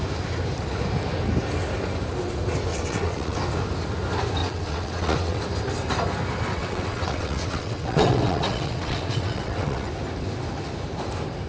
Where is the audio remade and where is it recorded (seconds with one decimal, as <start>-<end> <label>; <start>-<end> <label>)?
0.0-2.7 recorded; 2.7-3.4 remade; 3.4-4.4 recorded; 4.4-5.4 remade; 5.4-6.5 recorded; 6.5-9.9 remade; 9.9-11.5 recorded